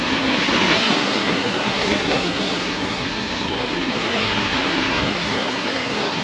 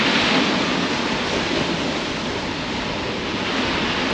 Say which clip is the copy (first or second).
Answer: first